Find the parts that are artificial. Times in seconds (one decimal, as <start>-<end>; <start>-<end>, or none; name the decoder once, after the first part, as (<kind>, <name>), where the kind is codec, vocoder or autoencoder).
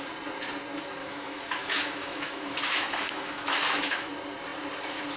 1.0-4.1 (autoencoder, DAC-VAE)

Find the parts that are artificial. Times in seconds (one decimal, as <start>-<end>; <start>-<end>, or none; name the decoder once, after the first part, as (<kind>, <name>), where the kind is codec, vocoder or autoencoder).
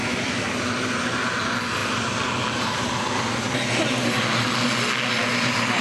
0.0-0.5 (autoencoder, DAC-VAE)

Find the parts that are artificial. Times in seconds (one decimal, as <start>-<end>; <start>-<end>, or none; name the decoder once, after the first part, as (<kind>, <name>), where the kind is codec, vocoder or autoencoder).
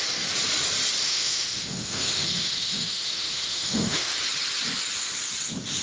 1.0-4.1 (autoencoder, DAC-VAE)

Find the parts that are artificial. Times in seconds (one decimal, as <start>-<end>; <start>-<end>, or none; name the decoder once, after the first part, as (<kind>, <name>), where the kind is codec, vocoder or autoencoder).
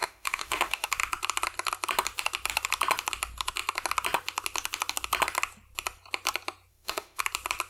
0.0-0.9 (autoencoder, DAC-VAE); 6.7-7.2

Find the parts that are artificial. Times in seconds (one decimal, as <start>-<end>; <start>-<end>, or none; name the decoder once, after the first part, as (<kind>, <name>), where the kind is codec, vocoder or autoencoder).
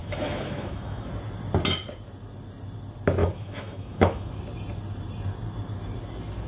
0.0-1.1 (autoencoder, DAC-VAE); 3.2-4.3